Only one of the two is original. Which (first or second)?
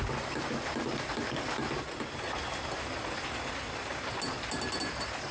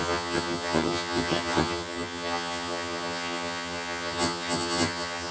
first